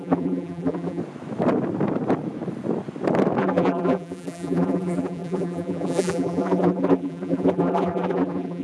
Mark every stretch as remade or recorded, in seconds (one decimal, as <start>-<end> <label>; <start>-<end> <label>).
0.0-1.0 remade; 1.0-3.4 recorded; 3.4-8.6 remade